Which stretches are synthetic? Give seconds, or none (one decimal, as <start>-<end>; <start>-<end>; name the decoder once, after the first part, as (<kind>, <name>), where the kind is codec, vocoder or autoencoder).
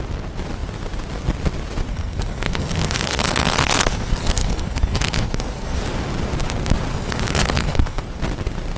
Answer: 1.9-5.8 (codec, SNAC); 6.9-8.0